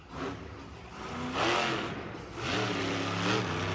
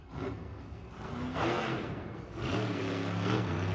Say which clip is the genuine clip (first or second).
first